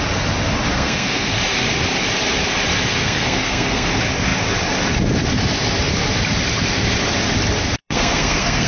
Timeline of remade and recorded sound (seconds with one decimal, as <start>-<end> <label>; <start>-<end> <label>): 0.0-0.7 recorded; 0.7-1.4 remade; 1.4-3.0 recorded; 3.0-3.9 remade; 3.9-7.8 recorded; 7.8-8.7 remade